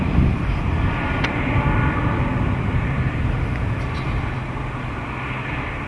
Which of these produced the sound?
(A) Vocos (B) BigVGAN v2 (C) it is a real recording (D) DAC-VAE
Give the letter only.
C